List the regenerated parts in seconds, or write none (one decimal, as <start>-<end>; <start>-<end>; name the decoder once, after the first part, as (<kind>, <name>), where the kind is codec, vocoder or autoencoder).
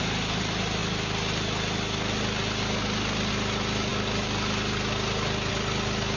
none